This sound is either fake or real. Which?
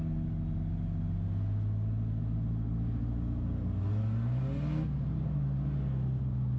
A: real